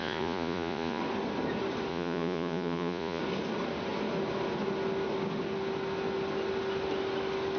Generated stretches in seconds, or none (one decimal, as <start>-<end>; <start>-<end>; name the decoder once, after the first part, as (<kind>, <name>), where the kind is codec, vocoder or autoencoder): 0.0-1.0 (vocoder, Vocos); 1.9-3.2